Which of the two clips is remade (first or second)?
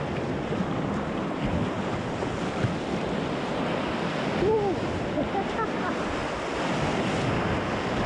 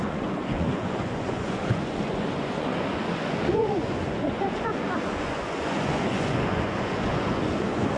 second